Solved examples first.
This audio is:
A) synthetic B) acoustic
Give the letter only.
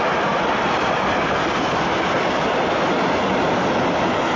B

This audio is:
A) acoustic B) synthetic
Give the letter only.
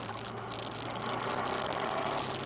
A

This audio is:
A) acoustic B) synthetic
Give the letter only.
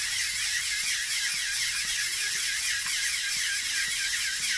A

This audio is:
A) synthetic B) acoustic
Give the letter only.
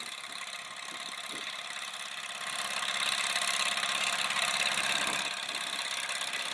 B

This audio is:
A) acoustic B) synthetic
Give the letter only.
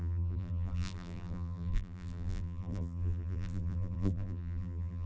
B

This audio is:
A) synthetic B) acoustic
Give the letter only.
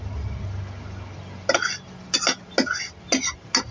B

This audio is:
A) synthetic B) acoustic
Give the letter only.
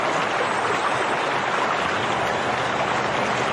B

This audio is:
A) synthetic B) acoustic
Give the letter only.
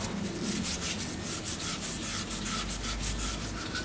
B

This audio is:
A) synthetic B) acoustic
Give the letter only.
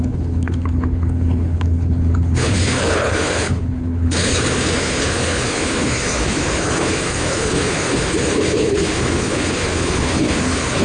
A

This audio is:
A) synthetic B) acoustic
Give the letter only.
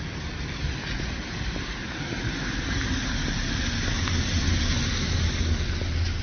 B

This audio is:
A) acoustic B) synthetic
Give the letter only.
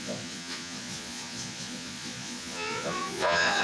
B